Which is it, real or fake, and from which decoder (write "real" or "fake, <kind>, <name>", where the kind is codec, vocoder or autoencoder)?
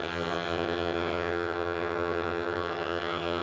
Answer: fake, vocoder, HiFi-GAN